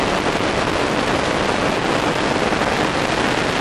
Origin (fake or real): real